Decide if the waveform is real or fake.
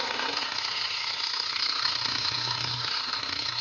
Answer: fake